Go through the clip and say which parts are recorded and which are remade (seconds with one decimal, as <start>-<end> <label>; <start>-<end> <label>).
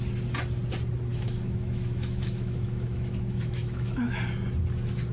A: 0.0-1.1 recorded; 1.1-4.2 remade; 4.2-5.1 recorded